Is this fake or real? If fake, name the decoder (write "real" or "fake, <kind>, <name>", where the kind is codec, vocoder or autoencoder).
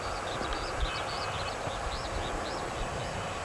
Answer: real